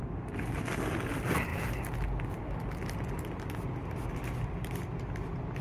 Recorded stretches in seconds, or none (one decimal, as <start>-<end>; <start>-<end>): 0.0-5.6